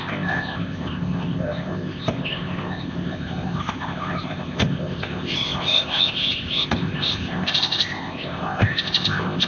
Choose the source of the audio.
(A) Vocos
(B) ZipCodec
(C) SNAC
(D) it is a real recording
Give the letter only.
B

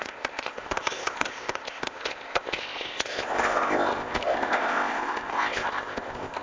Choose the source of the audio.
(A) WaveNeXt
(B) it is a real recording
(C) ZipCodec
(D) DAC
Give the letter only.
C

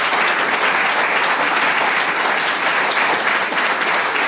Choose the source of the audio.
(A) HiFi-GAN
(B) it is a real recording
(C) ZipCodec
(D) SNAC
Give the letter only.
B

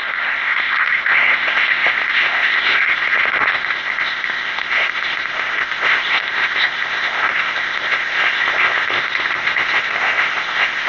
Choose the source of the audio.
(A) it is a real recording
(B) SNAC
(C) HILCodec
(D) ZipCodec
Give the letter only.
D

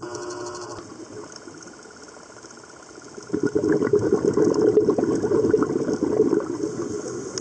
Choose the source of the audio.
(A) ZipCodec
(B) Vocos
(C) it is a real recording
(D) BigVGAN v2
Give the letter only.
C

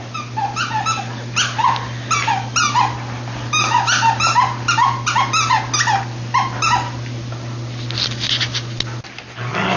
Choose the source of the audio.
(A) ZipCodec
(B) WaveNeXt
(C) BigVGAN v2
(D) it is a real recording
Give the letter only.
D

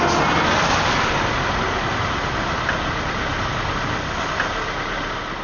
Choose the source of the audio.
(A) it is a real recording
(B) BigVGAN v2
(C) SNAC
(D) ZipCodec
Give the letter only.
A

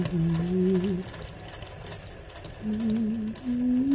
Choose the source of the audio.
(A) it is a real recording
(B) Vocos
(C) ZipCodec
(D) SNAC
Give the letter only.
A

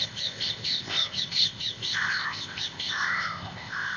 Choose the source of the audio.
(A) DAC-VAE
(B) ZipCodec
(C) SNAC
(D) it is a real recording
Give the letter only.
B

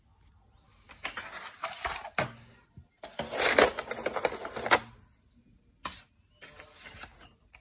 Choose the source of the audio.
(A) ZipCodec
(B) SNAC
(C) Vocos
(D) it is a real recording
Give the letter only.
D